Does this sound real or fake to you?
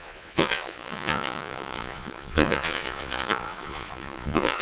fake